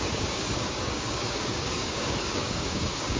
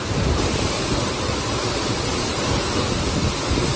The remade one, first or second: first